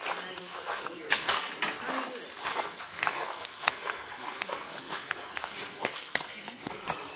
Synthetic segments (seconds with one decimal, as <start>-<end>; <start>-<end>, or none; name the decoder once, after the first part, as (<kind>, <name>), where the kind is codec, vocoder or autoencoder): 0.4-1.5 (codec, SNAC); 2.5-6.8